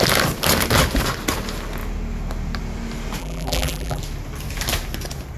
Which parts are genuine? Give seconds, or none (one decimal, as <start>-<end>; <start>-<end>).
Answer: 0.0-3.2; 4.0-5.4